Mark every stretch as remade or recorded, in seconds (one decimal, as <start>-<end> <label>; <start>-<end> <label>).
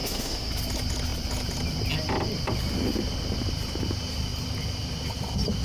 0.0-0.5 remade; 0.5-5.6 recorded